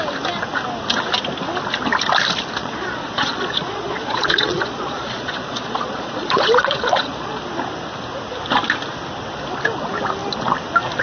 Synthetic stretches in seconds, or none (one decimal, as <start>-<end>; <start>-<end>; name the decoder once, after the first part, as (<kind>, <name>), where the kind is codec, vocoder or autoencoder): 2.6-7.4 (vocoder, Vocos)